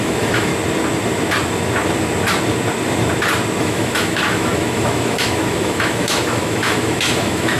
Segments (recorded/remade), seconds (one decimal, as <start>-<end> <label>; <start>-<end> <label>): 0.0-0.5 remade; 0.5-3.6 recorded; 3.6-7.6 remade